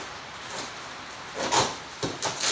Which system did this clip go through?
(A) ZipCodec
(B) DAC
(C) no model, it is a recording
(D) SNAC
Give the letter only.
C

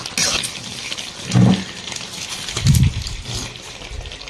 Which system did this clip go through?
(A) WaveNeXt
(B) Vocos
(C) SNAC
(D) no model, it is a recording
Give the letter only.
D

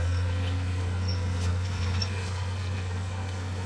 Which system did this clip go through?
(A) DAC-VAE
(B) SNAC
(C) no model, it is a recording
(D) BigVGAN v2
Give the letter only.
B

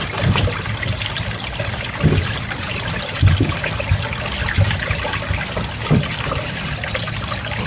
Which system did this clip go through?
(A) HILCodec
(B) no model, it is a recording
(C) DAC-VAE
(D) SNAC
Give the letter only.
B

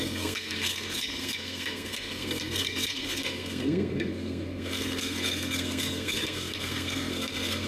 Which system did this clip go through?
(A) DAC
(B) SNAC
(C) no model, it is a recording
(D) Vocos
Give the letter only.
B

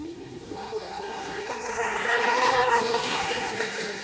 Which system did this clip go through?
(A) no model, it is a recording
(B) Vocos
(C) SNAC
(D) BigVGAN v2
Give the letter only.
C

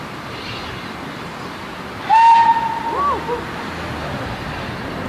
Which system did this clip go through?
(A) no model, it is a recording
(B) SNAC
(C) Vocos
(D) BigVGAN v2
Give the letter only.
A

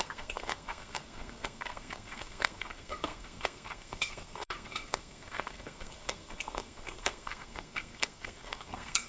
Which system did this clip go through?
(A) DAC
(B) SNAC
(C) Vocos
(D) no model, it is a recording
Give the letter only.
B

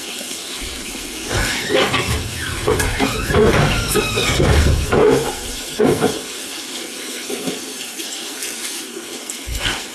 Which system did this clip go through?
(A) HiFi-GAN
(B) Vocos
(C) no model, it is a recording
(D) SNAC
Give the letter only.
D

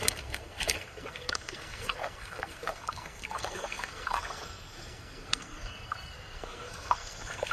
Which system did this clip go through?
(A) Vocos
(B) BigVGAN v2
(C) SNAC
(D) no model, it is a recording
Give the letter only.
C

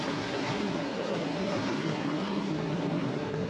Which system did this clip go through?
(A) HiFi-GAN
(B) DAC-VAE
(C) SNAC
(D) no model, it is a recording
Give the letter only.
C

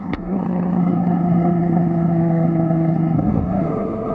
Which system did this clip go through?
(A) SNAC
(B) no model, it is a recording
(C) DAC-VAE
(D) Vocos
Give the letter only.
A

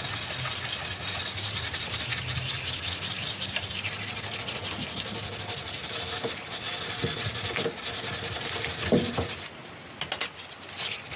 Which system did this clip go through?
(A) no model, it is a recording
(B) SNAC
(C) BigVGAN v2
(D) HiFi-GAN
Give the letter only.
A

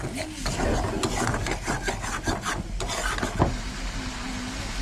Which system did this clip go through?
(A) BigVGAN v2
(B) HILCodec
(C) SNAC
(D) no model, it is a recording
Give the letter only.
D